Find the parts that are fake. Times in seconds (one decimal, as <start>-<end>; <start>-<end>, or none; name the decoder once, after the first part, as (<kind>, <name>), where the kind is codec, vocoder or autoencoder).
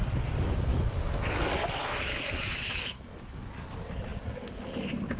0.7-1.3 (autoencoder, DAC-VAE); 1.8-3.5